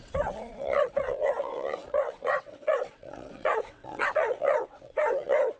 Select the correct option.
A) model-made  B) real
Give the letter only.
A